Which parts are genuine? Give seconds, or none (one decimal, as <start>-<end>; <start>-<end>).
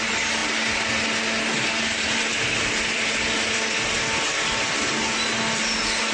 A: 0.0-6.1